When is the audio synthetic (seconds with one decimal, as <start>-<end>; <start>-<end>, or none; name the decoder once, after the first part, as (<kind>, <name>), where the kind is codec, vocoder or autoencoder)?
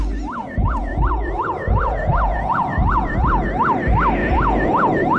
0.4-3.5 (vocoder, Vocos); 4.2-5.2